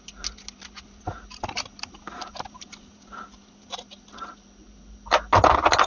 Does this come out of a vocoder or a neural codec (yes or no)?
no